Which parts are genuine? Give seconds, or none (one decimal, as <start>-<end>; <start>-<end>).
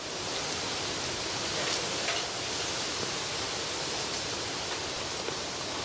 0.0-3.6; 4.8-5.8